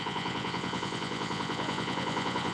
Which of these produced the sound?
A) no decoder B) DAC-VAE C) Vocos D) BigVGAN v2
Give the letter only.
C